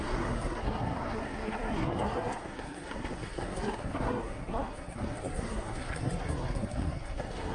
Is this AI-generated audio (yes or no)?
yes